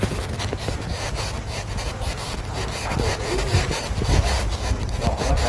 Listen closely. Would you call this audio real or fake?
fake